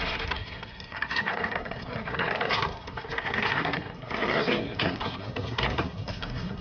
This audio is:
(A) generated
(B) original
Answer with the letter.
A